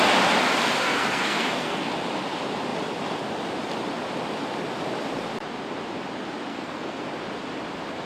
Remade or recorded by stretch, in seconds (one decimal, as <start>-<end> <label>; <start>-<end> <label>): 0.0-0.8 recorded; 0.8-1.8 remade; 1.8-6.5 recorded; 6.5-7.0 remade; 7.0-8.1 recorded